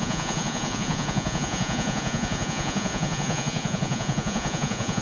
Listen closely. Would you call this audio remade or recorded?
remade